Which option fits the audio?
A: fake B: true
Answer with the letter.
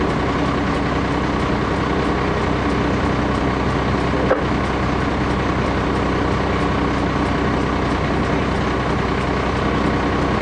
B